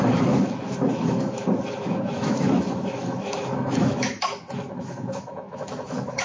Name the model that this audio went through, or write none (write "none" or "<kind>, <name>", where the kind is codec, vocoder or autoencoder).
autoencoder, DAC-VAE